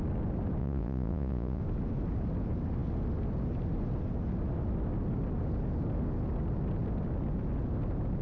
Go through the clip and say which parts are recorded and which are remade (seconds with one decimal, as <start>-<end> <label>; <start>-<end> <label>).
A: 0.0-0.6 recorded; 0.6-1.6 remade; 1.6-8.2 recorded